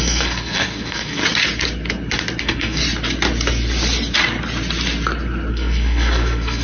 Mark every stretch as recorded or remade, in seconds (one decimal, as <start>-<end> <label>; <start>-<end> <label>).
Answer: 0.0-1.2 remade; 1.2-2.4 recorded; 2.4-2.8 remade; 2.8-5.5 recorded; 5.5-6.6 remade